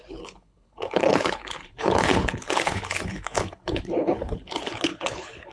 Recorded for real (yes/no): no